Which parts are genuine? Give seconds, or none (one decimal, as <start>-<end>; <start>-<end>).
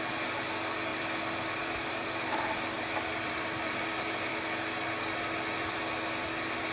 0.0-0.9; 4.3-6.7